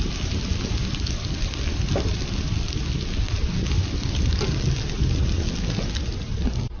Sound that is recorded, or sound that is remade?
recorded